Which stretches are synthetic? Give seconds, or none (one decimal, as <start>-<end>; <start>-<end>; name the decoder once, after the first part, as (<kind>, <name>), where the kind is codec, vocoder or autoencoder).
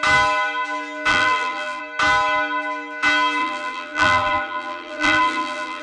1.1-1.8 (vocoder, BigVGAN v2); 3.4-5.8